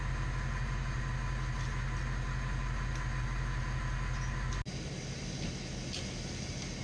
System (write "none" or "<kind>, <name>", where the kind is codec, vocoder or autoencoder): none